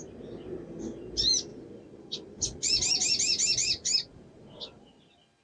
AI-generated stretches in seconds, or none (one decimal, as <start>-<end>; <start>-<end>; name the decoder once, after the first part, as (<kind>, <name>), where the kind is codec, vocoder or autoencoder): 1.5-2.6 (vocoder, BigVGAN v2); 3.8-5.0

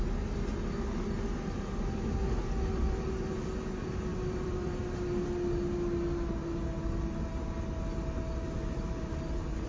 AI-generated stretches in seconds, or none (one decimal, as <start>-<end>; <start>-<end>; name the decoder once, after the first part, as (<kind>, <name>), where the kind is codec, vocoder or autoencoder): 4.1-4.7 (vocoder, BigVGAN v2)

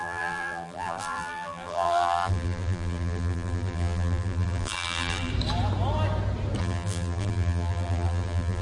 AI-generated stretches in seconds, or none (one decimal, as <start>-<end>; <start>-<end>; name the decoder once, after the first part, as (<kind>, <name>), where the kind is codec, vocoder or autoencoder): 0.0-5.3 (vocoder, BigVGAN v2); 6.6-8.6

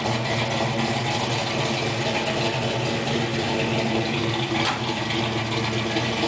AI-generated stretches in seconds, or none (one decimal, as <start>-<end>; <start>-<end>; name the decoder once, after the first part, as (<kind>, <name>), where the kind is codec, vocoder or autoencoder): none

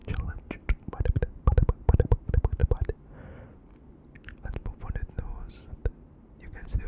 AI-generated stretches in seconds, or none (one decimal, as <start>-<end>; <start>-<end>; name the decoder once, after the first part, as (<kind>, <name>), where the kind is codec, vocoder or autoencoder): 0.8-2.6 (vocoder, BigVGAN v2); 3.9-6.9

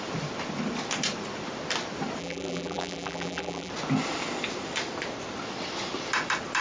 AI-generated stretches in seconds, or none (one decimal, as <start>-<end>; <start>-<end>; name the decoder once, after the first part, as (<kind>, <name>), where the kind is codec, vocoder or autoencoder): 2.2-3.7 (vocoder, BigVGAN v2)

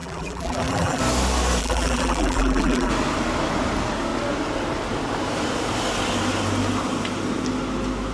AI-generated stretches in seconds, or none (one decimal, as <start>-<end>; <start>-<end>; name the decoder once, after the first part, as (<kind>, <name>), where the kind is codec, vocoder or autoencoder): 0.0-1.0 (vocoder, BigVGAN v2); 1.6-2.9